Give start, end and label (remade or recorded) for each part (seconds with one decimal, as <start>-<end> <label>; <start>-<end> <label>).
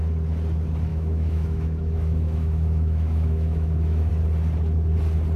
0.0-0.9 recorded; 0.9-4.1 remade; 4.1-5.4 recorded